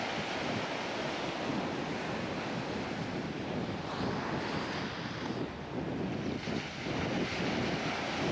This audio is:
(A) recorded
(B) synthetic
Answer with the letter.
A